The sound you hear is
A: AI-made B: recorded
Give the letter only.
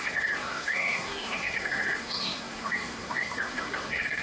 A